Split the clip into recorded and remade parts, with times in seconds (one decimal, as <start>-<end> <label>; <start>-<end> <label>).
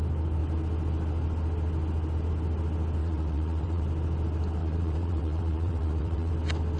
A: 0.0-3.0 recorded; 3.0-3.8 remade; 3.8-4.6 recorded; 4.6-6.3 remade; 6.3-6.8 recorded